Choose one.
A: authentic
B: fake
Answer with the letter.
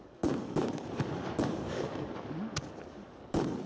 B